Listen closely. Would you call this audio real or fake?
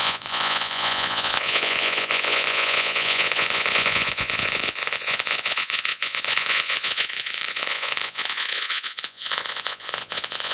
fake